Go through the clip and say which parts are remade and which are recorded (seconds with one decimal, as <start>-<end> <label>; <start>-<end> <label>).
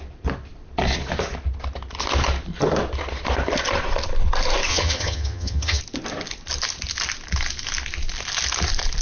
0.0-4.7 recorded; 4.7-5.8 remade; 5.8-9.0 recorded